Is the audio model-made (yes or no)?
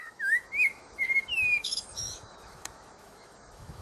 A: yes